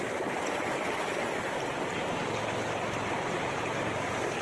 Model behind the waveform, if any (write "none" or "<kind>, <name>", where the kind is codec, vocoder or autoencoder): none